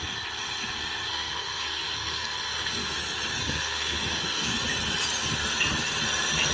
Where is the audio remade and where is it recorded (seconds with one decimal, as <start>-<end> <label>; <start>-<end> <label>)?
0.0-1.1 recorded; 1.1-2.9 remade; 2.9-3.4 recorded; 3.4-4.5 remade; 4.5-6.5 recorded